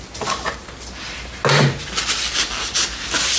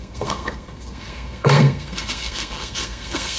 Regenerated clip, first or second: second